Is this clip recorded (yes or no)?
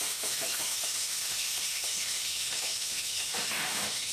no